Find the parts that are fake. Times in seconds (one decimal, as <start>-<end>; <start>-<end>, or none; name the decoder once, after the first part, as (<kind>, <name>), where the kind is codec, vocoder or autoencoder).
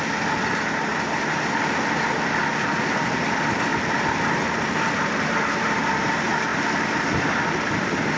none